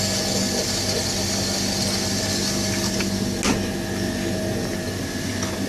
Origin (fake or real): real